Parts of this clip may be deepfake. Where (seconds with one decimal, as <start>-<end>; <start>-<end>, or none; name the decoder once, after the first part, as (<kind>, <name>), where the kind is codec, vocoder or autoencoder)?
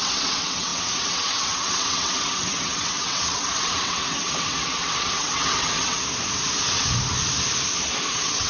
0.0-6.0 (vocoder, WaveNeXt); 8.1-8.5